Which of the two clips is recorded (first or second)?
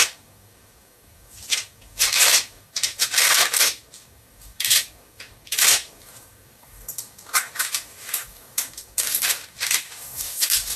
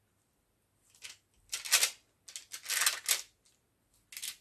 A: second